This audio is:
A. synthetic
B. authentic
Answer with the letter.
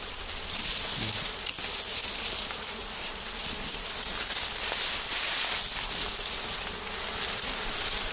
B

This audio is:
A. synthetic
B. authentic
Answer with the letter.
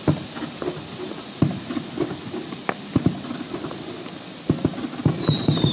B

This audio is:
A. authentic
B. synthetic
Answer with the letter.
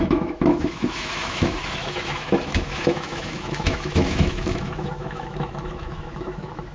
B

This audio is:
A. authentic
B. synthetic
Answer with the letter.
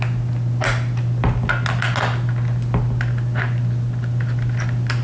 A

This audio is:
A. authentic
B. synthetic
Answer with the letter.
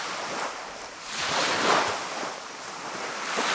A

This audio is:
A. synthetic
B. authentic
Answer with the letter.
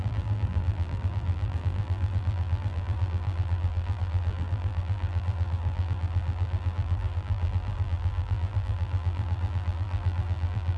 A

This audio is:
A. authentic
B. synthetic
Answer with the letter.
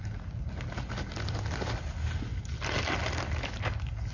A